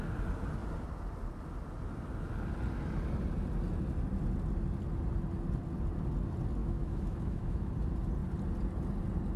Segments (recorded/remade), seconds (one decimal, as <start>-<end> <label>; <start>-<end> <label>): 0.0-6.6 recorded; 6.6-7.7 remade; 7.7-9.4 recorded